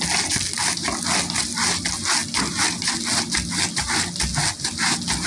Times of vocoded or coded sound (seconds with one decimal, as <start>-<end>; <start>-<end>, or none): none